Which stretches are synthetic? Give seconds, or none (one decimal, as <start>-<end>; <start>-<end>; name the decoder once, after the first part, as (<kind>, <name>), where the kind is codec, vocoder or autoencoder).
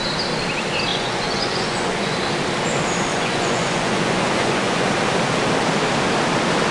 0.9-2.2 (vocoder, Vocos); 3.1-4.9